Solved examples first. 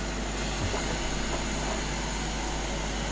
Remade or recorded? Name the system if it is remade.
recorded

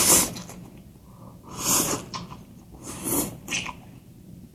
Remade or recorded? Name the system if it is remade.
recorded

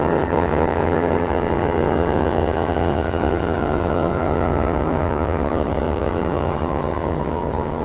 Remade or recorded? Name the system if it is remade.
remade, vocoder, HiFi-GAN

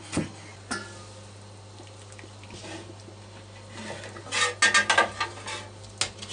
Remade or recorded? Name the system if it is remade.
recorded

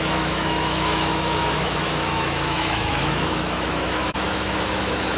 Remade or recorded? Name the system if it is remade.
remade, autoencoder, DAC-VAE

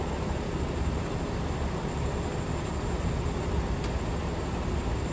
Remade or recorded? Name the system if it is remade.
recorded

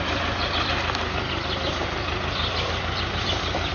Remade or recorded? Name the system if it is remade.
recorded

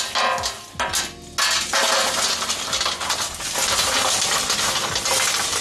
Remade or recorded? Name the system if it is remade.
recorded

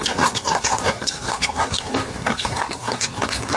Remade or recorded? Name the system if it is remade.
remade, codec, SNAC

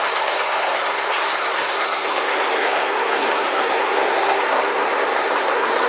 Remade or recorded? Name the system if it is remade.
remade, codec, SNAC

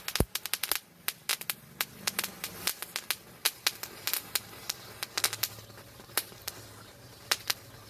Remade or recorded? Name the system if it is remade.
recorded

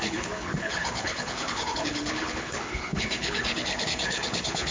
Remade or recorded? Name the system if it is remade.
remade, codec, HILCodec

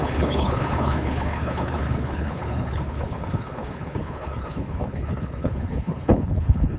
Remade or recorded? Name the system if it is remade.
remade, codec, HILCodec